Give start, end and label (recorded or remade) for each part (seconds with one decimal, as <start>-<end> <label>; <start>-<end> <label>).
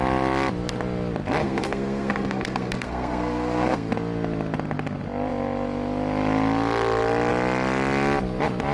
0.0-1.4 recorded; 1.4-3.9 remade; 3.9-8.7 recorded